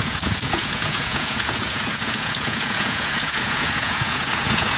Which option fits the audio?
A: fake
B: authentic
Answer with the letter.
A